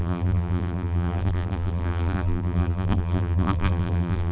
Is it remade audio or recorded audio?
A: remade